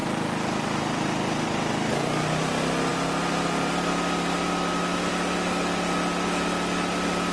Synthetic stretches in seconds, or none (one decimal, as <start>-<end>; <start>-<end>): 0.0-1.7